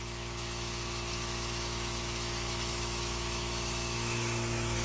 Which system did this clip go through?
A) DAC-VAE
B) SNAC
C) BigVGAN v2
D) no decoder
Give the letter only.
A